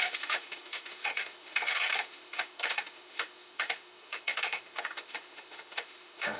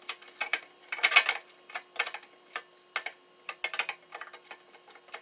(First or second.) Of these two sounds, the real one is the second